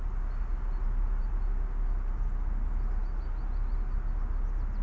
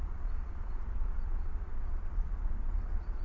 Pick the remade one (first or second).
second